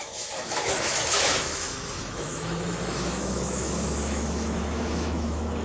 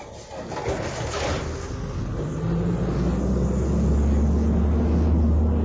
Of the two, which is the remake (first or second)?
first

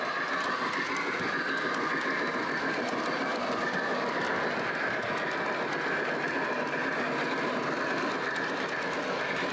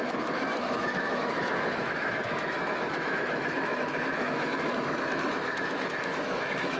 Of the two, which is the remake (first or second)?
second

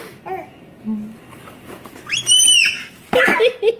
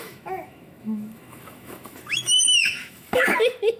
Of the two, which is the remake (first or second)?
second